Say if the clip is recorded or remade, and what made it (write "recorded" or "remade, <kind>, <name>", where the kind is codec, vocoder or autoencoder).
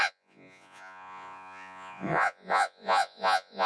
remade, vocoder, Vocos